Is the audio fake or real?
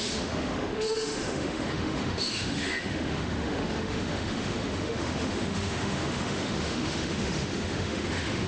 fake